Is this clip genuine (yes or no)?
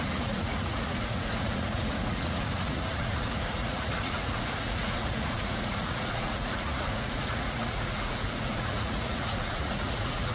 no